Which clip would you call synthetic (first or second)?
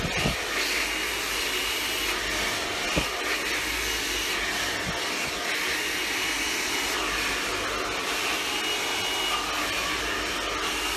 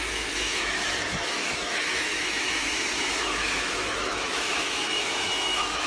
second